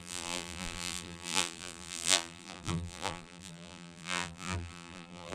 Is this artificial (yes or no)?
yes